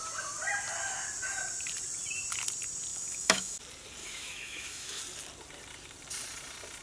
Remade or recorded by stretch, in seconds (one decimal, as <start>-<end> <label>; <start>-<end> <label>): 0.0-2.9 recorded; 2.9-3.6 remade; 3.6-4.0 recorded; 4.0-5.0 remade; 5.0-6.8 recorded